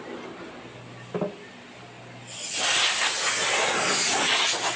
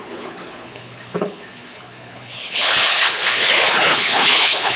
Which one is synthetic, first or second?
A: second